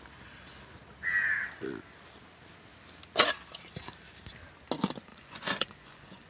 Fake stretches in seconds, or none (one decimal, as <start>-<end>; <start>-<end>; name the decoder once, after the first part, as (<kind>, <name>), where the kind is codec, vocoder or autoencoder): 5.1-6.3 (vocoder, Vocos)